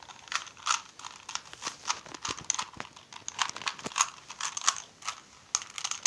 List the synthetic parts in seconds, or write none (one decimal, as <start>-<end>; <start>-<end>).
none